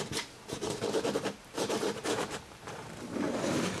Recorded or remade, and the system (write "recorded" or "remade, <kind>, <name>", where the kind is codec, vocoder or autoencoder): remade, vocoder, BigVGAN v2